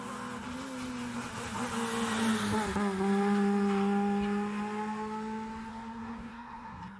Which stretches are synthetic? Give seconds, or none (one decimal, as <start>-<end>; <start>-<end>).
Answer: 5.7-7.0

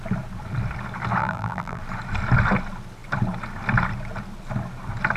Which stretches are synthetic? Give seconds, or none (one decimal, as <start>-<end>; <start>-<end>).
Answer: 1.2-1.8

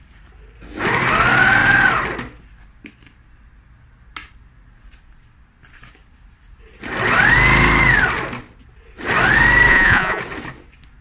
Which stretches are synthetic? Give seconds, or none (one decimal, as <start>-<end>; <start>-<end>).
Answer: 9.7-10.2

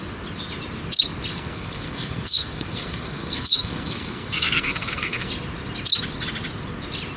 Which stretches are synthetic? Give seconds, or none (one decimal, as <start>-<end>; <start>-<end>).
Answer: 1.3-5.3

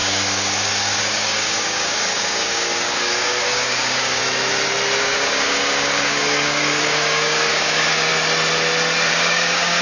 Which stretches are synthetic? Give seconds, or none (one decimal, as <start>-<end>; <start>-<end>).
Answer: 0.0-4.2; 5.0-8.1; 9.1-9.8

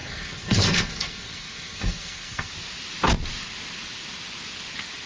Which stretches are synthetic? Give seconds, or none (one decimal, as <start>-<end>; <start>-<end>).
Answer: 0.0-2.5

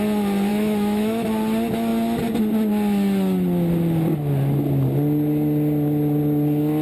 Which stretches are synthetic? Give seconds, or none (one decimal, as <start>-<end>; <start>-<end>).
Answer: 0.5-1.3